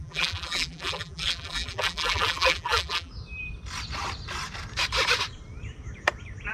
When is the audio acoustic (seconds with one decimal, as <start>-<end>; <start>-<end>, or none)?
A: 3.1-6.5